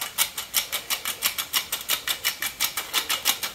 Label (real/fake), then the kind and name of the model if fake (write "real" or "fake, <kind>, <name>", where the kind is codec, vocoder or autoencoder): real